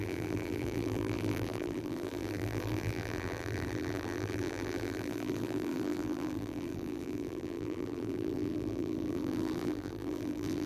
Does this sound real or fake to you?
fake